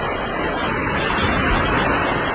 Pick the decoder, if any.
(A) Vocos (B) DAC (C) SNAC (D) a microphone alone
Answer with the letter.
D